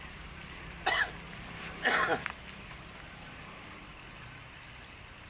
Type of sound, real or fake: real